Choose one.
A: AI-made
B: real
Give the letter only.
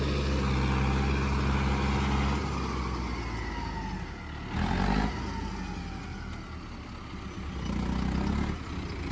B